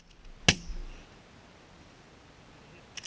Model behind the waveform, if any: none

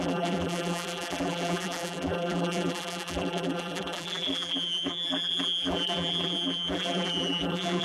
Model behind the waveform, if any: vocoder, BigVGAN v2